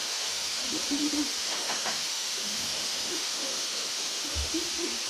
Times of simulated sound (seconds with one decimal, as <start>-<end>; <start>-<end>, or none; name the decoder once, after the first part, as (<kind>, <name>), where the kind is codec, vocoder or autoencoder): 0.0-0.6 (autoencoder, DAC-VAE); 1.4-4.5